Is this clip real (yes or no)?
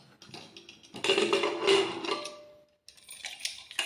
yes